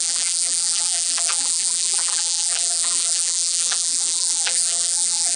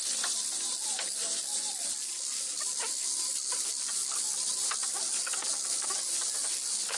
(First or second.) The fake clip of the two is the first